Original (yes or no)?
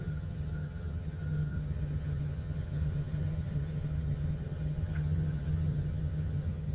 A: no